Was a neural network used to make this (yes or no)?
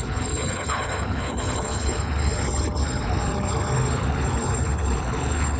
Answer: yes